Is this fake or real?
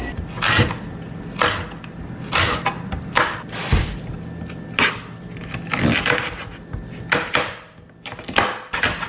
real